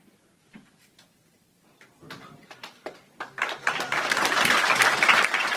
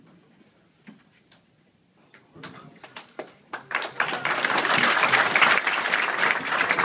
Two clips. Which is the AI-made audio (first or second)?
second